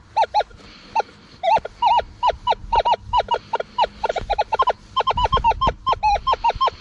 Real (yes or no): yes